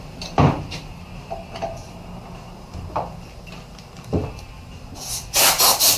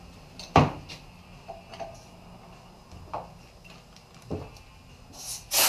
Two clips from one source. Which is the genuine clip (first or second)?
second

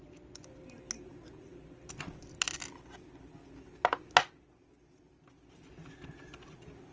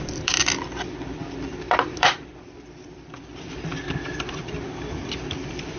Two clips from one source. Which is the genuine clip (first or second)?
first